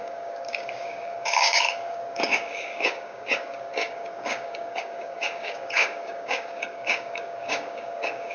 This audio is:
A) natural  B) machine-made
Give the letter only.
B